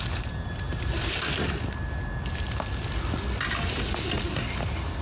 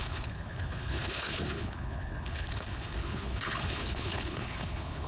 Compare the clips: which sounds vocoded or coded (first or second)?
second